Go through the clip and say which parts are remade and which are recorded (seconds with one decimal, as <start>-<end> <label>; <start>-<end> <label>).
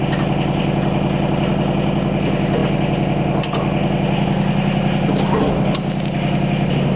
0.0-7.0 recorded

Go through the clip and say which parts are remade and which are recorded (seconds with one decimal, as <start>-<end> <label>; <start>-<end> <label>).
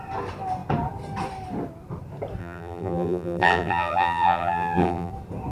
0.0-2.4 recorded; 2.4-5.1 remade; 5.1-5.5 recorded